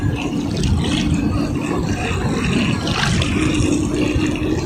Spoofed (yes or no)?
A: no